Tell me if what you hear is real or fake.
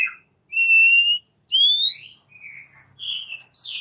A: real